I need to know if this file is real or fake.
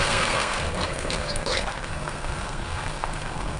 fake